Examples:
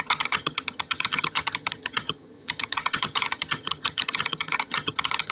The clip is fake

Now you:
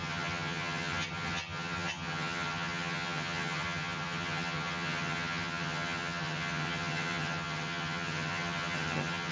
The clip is fake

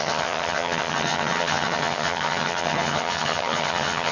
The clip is fake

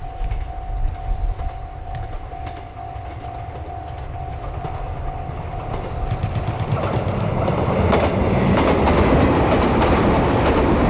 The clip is real